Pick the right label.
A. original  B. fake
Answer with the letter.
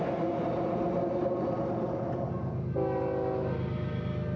A